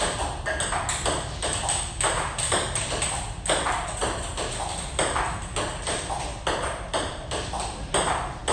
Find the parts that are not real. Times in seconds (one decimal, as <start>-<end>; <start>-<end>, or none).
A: none